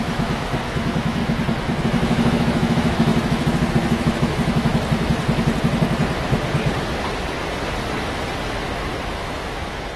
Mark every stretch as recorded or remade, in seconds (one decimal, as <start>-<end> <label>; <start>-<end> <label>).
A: 0.0-1.2 remade; 1.2-1.8 recorded; 1.8-4.7 remade; 4.7-9.1 recorded; 9.1-10.0 remade